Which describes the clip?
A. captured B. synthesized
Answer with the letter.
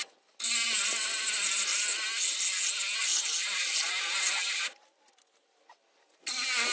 A